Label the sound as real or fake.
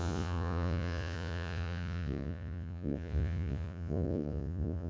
fake